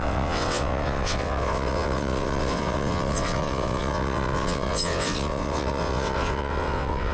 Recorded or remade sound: remade